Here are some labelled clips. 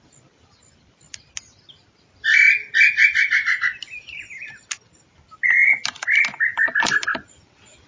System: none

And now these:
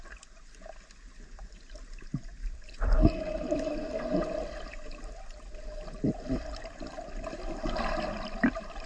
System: none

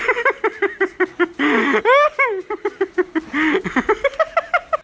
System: none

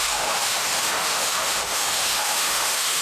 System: autoencoder, DAC-VAE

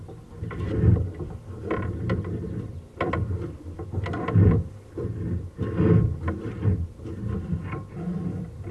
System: none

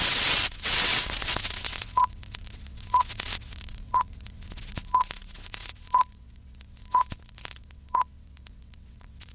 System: vocoder, WaveNeXt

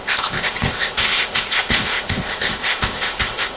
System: codec, ZipCodec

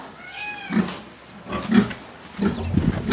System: none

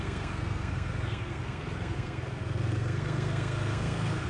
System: codec, SNAC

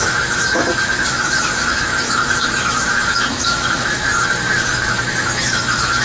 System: autoencoder, DAC-VAE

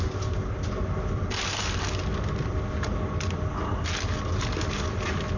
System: none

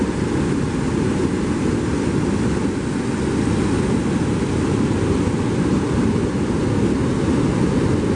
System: none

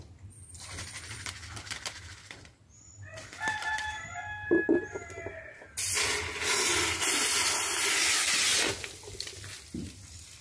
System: none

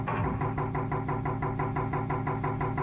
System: none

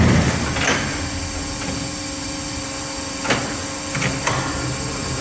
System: none